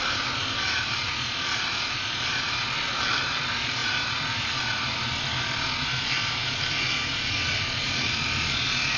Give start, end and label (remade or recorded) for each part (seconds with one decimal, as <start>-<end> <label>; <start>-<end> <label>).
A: 0.0-9.0 recorded